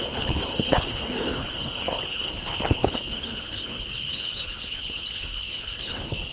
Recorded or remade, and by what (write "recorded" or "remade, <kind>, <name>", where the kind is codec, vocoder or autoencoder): remade, codec, HILCodec